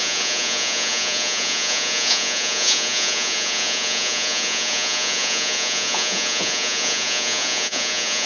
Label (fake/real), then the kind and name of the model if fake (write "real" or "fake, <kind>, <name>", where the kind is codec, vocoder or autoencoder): fake, vocoder, Vocos